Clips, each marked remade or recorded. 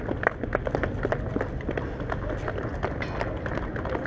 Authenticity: recorded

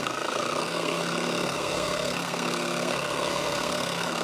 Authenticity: remade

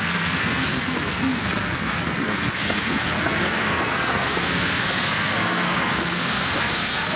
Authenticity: remade